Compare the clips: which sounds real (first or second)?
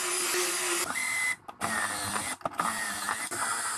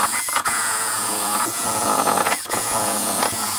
first